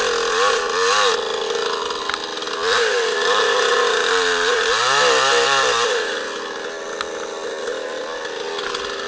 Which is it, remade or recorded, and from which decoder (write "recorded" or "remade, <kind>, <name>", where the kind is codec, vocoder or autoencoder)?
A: recorded